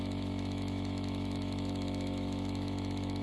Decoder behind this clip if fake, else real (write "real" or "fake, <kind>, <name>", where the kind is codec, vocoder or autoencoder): fake, autoencoder, DAC-VAE